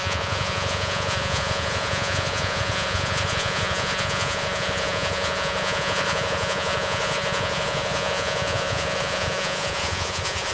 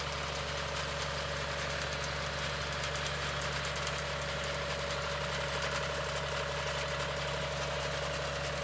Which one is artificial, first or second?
first